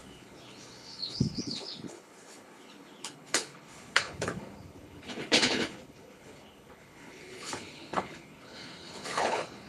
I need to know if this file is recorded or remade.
remade